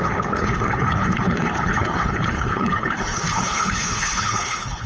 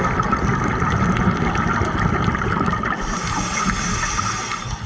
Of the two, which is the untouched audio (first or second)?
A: second